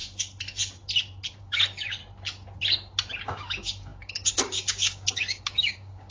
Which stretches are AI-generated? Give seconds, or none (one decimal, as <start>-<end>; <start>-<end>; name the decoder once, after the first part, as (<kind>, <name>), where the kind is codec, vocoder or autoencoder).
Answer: 1.4-2.0 (codec, DAC); 3.2-6.1